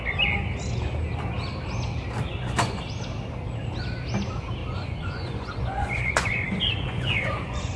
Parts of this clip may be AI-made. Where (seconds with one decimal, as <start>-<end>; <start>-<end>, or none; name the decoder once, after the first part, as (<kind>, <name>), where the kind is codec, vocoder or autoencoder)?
2.3-2.8 (vocoder, Vocos); 4.6-7.8